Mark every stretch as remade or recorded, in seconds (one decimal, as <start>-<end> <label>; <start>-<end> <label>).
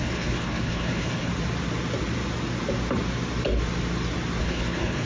0.0-1.3 remade; 1.3-4.4 recorded; 4.4-5.1 remade